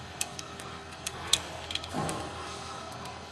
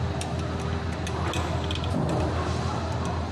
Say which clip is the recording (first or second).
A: second